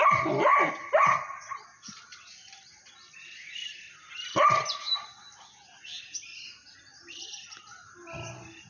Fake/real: real